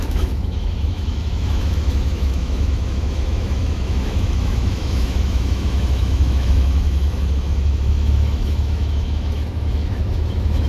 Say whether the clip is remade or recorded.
remade